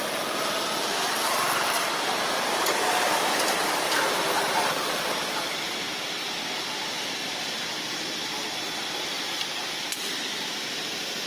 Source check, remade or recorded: recorded